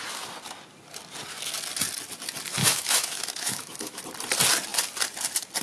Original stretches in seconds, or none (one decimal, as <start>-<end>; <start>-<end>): 0.0-2.6; 4.0-5.6